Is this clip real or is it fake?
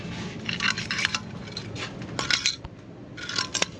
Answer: real